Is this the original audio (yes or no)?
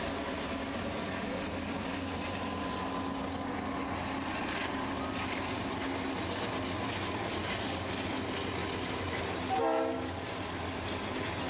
yes